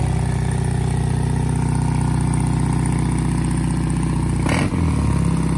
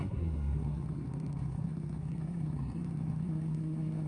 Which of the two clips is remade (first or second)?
second